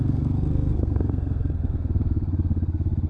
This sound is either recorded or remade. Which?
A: remade